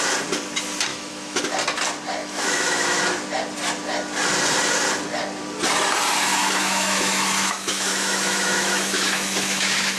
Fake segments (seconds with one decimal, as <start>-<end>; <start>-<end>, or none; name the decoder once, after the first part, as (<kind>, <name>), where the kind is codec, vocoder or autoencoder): 0.9-1.4 (autoencoder, DAC-VAE); 2.2-3.0; 6.4-10.0